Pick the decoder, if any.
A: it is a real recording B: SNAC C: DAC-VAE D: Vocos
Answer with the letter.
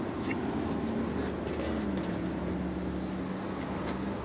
A